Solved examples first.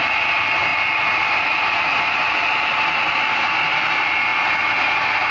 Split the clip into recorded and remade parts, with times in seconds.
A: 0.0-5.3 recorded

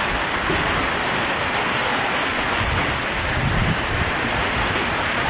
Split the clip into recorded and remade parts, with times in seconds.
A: 0.0-2.3 recorded; 2.3-2.8 remade; 2.8-5.3 recorded

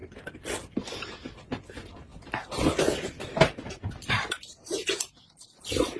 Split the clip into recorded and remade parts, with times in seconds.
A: 0.0-6.0 recorded

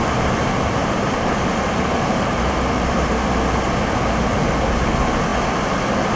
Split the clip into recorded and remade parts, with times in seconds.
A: 0.0-0.8 recorded; 0.8-3.3 remade; 3.3-6.2 recorded